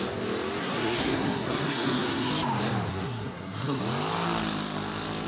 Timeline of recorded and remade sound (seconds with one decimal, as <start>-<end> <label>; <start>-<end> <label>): 0.0-0.6 recorded; 0.6-2.3 remade; 2.3-2.9 recorded; 2.9-3.8 remade; 3.8-5.3 recorded